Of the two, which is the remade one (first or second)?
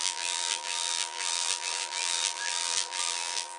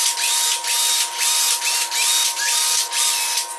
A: first